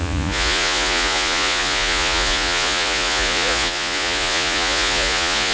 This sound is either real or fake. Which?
fake